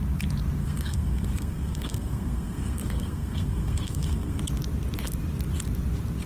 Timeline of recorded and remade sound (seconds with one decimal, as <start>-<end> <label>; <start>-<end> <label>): 0.0-0.6 recorded; 0.6-4.4 remade; 4.4-6.3 recorded